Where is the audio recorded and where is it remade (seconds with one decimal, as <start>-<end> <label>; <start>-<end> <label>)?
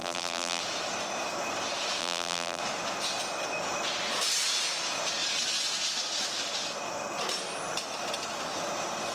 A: 0.0-0.6 remade; 0.6-2.0 recorded; 2.0-2.6 remade; 2.6-9.1 recorded